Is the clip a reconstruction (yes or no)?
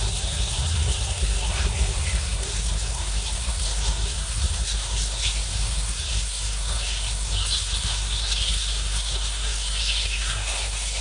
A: yes